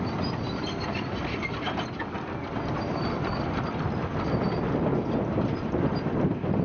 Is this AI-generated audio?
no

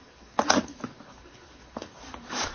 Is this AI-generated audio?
no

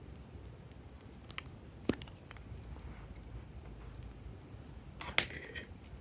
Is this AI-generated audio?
no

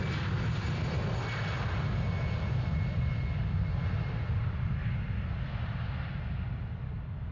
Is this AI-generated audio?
no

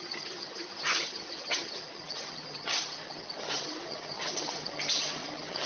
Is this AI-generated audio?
yes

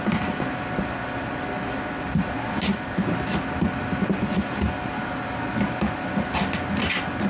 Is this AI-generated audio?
no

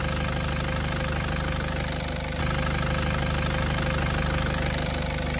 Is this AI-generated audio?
no